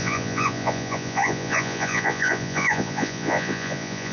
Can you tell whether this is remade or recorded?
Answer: remade